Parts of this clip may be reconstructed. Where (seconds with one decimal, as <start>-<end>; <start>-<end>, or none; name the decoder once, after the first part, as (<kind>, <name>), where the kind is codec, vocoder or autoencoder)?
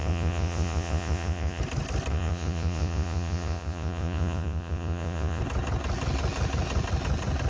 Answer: 0.0-1.6 (vocoder, Vocos); 2.1-5.4